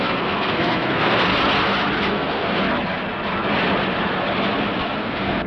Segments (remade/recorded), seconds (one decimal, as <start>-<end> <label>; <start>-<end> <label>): 0.0-1.3 remade; 1.3-2.1 recorded; 2.1-2.6 remade; 2.6-5.0 recorded; 5.0-5.5 remade